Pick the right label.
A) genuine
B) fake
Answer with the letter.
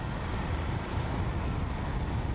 A